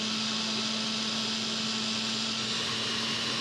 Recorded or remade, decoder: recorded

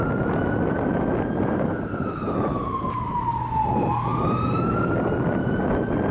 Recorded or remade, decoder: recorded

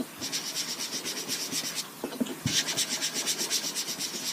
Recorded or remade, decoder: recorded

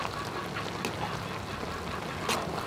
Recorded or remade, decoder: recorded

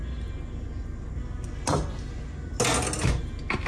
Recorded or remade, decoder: recorded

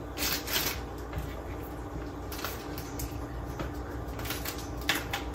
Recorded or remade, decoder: recorded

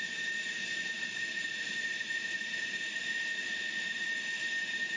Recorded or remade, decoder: remade, vocoder, BigVGAN v2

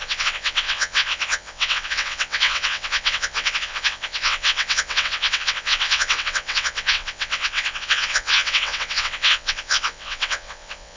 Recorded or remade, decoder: remade, vocoder, WaveNeXt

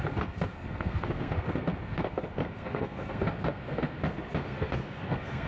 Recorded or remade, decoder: remade, codec, SNAC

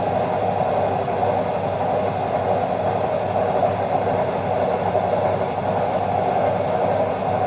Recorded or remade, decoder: recorded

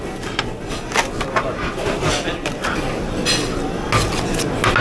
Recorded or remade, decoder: recorded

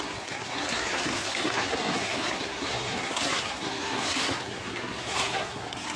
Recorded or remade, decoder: remade, codec, SNAC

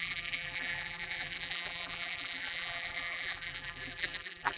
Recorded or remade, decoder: remade, vocoder, BigVGAN v2